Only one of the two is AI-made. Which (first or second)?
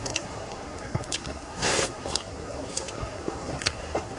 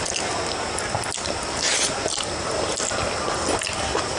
first